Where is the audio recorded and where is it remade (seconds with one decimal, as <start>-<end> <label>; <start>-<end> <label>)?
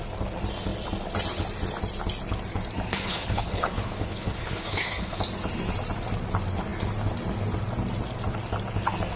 0.0-2.9 recorded; 2.9-5.2 remade; 5.2-9.2 recorded